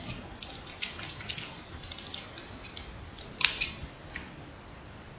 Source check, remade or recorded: recorded